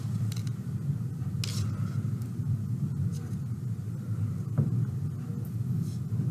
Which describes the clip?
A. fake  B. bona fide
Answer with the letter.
B